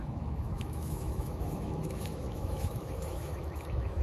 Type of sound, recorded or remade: remade